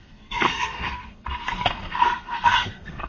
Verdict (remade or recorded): remade